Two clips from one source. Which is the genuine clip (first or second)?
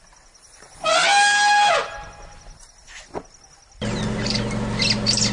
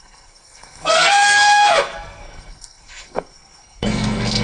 first